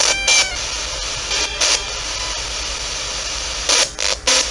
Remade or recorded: recorded